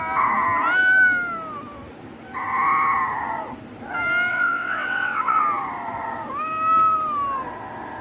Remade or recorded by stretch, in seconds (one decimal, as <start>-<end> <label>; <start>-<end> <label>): 0.0-4.3 recorded; 4.3-5.4 remade; 5.4-8.0 recorded